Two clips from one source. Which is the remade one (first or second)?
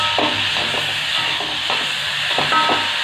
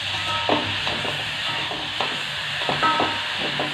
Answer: second